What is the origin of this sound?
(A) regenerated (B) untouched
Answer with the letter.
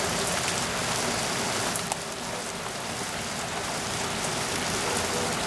B